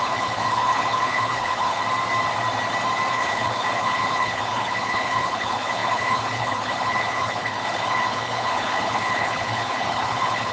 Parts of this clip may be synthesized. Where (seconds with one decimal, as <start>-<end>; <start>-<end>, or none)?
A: 0.0-1.8; 3.1-10.5